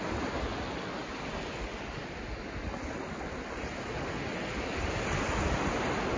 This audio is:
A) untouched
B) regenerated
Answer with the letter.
A